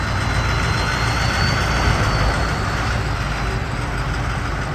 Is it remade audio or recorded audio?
recorded